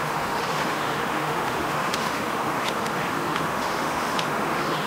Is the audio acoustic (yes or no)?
no